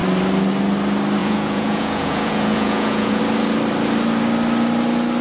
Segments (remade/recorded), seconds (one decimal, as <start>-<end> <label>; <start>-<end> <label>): 0.0-1.2 recorded; 1.2-3.2 remade; 3.2-5.2 recorded